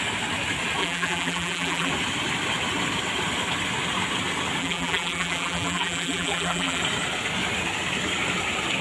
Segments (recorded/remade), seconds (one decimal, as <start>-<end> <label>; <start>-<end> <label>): 0.0-0.8 recorded; 0.8-1.9 remade; 1.9-4.6 recorded; 4.6-6.8 remade; 6.8-8.8 recorded